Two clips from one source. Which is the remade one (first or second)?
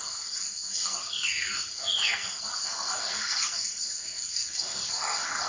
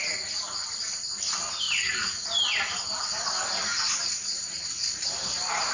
first